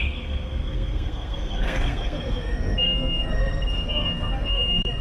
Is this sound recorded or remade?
remade